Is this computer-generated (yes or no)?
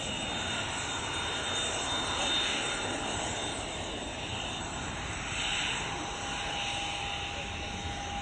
no